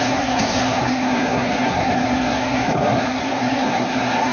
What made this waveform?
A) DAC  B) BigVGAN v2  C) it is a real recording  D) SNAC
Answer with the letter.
D